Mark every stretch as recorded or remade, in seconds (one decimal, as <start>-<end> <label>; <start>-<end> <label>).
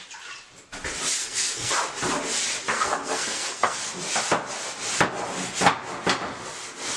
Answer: 0.0-1.2 recorded; 1.2-1.7 remade; 1.7-2.7 recorded; 2.7-3.9 remade; 3.9-7.0 recorded